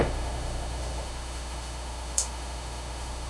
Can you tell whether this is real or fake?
fake